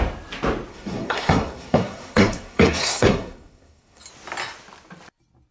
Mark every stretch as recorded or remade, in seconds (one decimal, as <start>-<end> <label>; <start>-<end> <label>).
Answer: 0.0-0.7 recorded; 0.7-4.0 remade; 4.0-5.5 recorded